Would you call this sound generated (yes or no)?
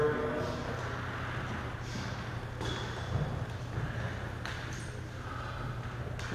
no